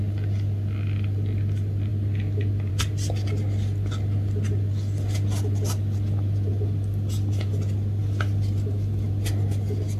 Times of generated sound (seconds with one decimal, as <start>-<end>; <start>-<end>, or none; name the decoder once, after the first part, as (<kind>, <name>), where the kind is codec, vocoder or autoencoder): none